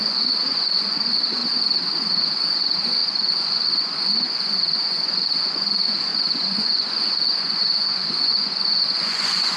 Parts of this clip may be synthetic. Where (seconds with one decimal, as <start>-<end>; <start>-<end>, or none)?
0.0-1.4; 2.1-9.6